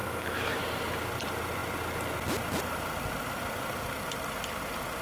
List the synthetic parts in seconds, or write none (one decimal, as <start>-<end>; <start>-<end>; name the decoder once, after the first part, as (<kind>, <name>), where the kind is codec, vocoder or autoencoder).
0.0-0.6 (autoencoder, DAC-VAE)